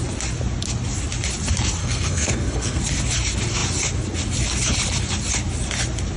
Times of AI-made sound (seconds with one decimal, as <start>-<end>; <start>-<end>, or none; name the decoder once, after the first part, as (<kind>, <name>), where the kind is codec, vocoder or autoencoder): 1.8-2.8 (codec, SNAC)